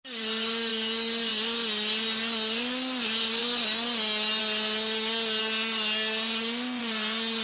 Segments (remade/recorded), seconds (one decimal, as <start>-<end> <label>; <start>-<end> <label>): 0.0-7.4 recorded